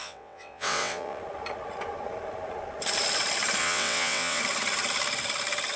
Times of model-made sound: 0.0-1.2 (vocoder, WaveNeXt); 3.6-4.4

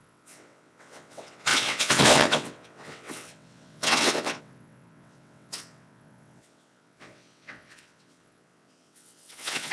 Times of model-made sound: 0.0-9.7 (vocoder, WaveNeXt)

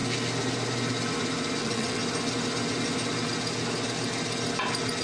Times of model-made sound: 1.6-2.0 (vocoder, WaveNeXt)

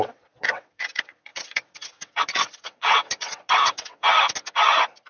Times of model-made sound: 0.0-4.1 (vocoder, WaveNeXt)

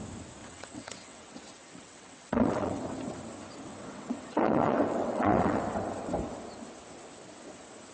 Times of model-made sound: 0.4-2.8 (vocoder, WaveNeXt); 3.7-5.6

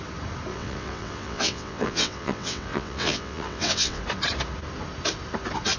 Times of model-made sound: 0.5-4.0 (vocoder, WaveNeXt)